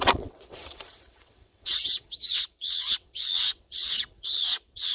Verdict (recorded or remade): remade